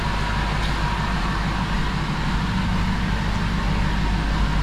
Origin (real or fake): real